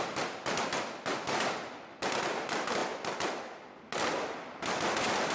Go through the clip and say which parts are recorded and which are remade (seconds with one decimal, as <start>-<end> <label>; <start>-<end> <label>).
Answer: 0.0-5.3 recorded

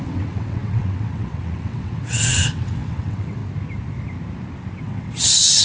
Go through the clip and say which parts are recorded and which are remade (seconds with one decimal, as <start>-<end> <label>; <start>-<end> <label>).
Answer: 0.0-3.4 remade; 3.4-4.8 recorded; 4.8-5.6 remade

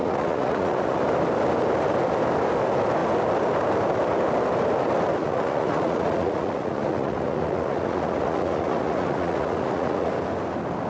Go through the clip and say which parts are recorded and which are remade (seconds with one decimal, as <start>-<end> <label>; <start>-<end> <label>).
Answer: 0.0-1.0 remade; 1.0-5.2 recorded; 5.2-10.1 remade; 10.1-10.9 recorded

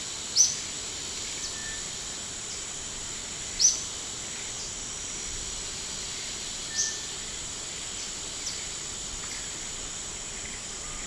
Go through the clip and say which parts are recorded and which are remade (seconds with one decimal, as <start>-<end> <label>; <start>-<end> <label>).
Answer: 0.0-11.1 recorded

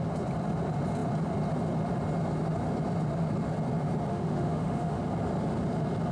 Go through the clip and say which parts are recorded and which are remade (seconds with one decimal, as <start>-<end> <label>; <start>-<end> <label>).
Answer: 0.0-4.1 recorded; 4.1-5.0 remade; 5.0-6.1 recorded

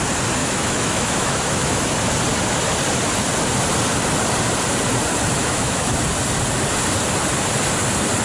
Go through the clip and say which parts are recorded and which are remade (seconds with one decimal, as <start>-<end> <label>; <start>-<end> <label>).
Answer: 0.0-0.4 recorded; 0.4-1.8 remade; 1.8-5.4 recorded; 5.4-6.0 remade; 6.0-8.2 recorded

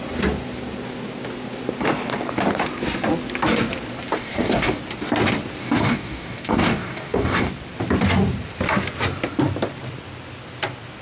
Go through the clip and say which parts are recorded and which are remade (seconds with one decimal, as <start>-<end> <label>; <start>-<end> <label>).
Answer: 0.0-4.2 recorded; 4.2-4.8 remade; 4.8-5.6 recorded; 5.6-7.5 remade; 7.5-11.0 recorded

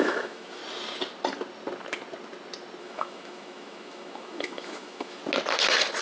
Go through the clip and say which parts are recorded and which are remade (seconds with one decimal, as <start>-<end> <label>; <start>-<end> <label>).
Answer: 0.0-0.6 remade; 0.6-2.8 recorded; 2.8-5.2 remade; 5.2-6.0 recorded